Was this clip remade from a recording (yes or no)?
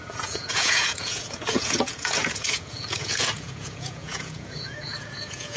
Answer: yes